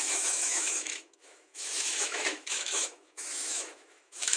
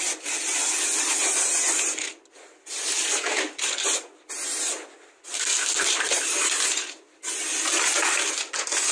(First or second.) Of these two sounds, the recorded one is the second